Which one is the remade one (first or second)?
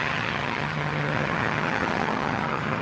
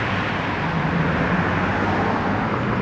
first